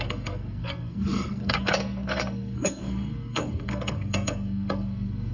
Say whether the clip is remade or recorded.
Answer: remade